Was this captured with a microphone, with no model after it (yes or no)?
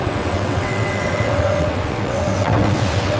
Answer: no